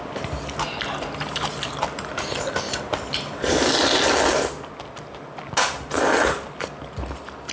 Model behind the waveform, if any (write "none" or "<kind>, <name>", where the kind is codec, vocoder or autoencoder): none